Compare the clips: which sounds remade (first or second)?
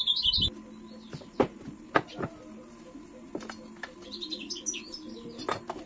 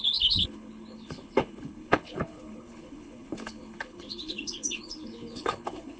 second